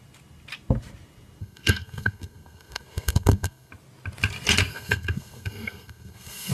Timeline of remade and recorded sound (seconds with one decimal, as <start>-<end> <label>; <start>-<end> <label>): 0.0-1.4 recorded; 1.4-3.7 remade; 3.7-4.7 recorded; 4.7-6.5 remade